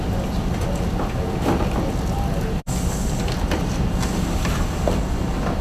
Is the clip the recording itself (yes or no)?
yes